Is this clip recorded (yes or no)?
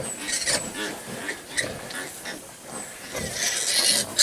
yes